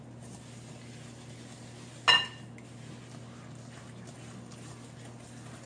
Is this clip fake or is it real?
real